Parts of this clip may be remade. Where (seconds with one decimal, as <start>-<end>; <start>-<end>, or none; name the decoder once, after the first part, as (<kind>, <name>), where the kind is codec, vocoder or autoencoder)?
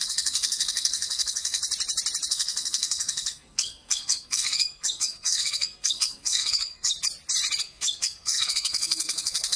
0.0-1.6 (codec, SNAC); 2.3-6.9; 7.6-9.6